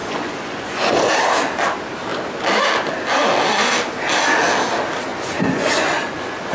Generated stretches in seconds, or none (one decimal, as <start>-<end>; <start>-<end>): 0.0-1.1; 5.1-6.5